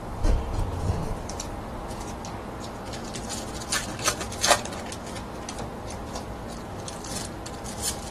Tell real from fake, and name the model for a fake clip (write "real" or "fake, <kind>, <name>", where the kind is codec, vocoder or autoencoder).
real